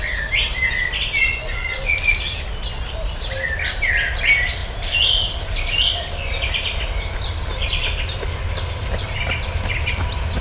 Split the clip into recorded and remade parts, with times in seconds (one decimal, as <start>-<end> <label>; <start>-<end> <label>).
0.0-1.2 recorded; 1.2-2.0 remade; 2.0-10.4 recorded